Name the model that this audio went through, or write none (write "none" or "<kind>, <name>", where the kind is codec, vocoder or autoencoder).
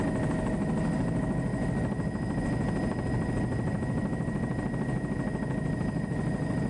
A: none